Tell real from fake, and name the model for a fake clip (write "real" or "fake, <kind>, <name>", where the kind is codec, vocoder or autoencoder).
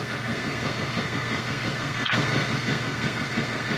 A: fake, codec, SNAC